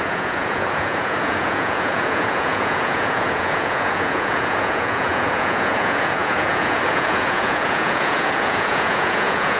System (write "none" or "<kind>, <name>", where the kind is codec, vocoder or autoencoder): vocoder, Vocos